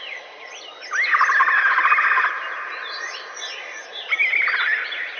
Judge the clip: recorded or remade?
recorded